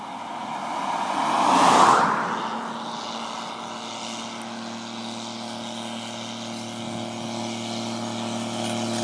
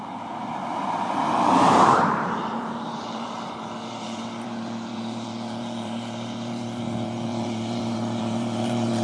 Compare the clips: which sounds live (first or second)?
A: first